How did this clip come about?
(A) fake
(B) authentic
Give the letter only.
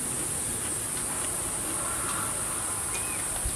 B